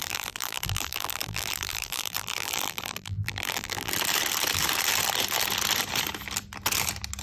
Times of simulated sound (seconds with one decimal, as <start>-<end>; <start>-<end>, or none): 0.0-3.9